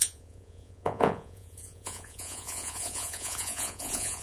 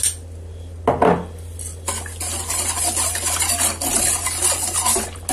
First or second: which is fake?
first